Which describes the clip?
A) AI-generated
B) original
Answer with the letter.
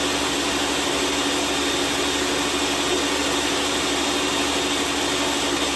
B